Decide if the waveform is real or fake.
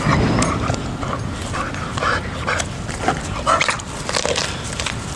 real